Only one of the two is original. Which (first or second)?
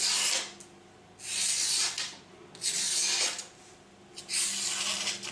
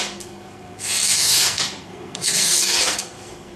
first